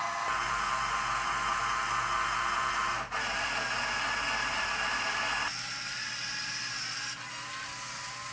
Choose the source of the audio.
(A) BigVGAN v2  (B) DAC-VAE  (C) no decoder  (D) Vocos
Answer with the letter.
C